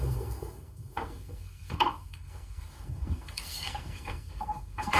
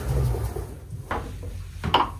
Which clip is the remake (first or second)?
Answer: first